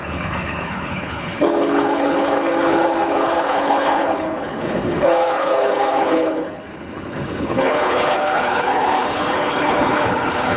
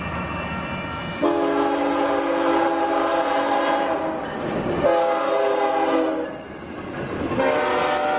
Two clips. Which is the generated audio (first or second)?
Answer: first